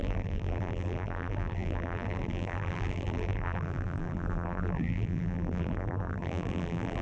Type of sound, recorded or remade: remade